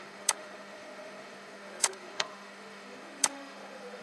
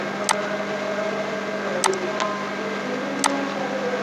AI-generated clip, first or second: first